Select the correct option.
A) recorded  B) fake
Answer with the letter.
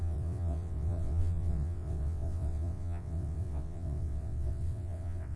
B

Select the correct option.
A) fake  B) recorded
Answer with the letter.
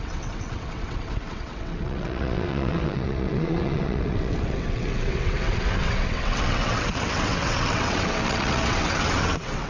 A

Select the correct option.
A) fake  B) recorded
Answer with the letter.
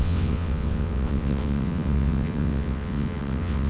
A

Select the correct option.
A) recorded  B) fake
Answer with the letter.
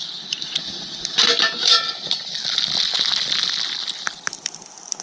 A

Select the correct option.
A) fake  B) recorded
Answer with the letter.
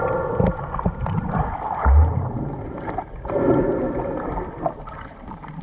B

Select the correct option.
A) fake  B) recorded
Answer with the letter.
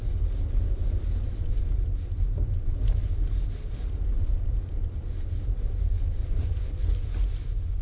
B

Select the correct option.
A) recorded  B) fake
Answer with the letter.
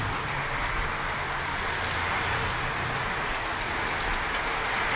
A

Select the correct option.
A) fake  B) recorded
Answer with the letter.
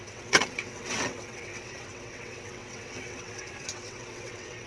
A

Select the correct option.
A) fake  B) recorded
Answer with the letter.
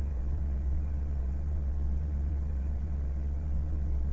A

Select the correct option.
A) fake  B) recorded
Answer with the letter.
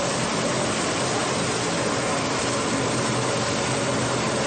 B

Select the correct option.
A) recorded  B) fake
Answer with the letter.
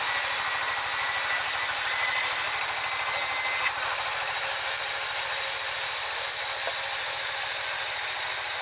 A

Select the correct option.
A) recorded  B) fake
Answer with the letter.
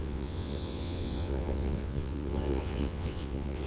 B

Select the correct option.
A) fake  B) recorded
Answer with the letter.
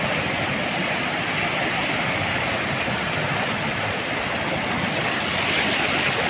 B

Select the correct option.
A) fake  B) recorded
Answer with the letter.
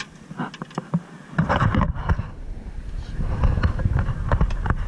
B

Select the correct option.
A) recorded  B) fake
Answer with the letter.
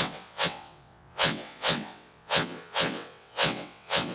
B